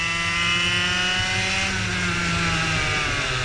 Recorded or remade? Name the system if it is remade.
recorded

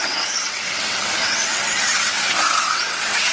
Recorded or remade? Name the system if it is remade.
remade, vocoder, WaveNeXt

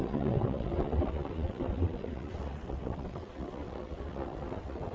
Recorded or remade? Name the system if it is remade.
remade, vocoder, WaveNeXt